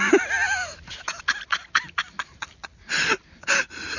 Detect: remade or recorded recorded